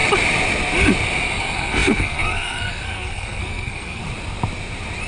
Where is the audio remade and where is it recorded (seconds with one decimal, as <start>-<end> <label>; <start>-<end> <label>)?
0.0-1.4 recorded; 1.4-4.0 remade; 4.0-5.1 recorded